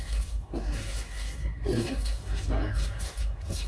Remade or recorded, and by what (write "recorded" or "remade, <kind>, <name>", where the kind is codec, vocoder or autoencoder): remade, codec, SNAC